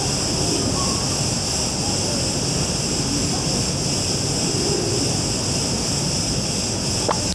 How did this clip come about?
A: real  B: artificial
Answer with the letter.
A